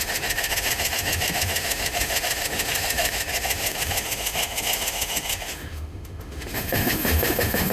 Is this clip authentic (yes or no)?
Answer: no